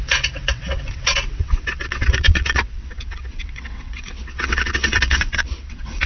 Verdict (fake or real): fake